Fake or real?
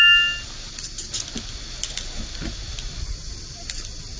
real